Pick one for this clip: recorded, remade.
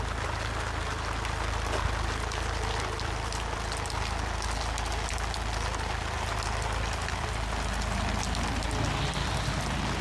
recorded